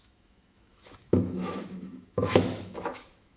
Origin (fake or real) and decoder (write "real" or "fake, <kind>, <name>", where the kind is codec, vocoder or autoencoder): fake, autoencoder, DAC-VAE